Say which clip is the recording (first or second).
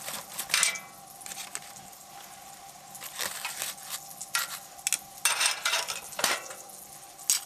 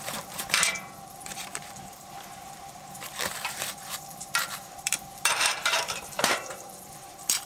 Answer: first